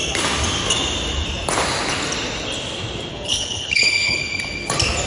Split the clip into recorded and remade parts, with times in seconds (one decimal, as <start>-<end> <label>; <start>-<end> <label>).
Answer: 0.0-3.1 recorded; 3.1-4.2 remade; 4.2-5.1 recorded